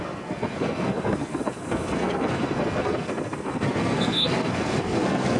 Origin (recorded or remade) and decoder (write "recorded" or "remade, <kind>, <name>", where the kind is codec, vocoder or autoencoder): remade, codec, SNAC